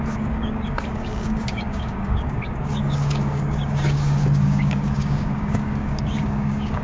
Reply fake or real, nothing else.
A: fake